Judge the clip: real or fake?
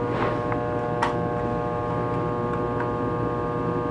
real